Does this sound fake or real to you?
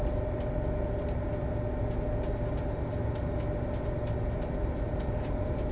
real